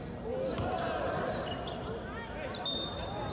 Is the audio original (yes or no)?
yes